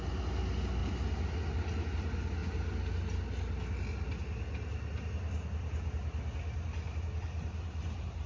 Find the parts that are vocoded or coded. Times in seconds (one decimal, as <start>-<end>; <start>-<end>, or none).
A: none